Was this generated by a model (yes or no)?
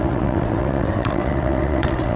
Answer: yes